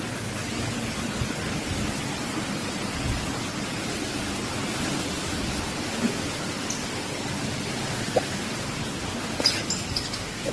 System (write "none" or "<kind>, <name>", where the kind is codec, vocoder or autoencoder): none